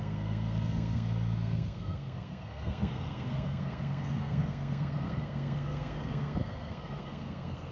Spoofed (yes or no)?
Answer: yes